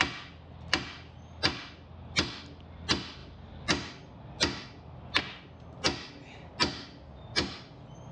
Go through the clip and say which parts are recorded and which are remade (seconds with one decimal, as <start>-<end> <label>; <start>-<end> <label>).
0.0-8.1 recorded